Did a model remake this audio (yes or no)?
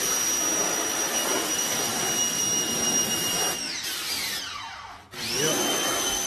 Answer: no